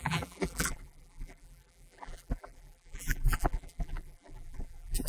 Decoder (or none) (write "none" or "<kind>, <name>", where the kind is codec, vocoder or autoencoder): vocoder, BigVGAN v2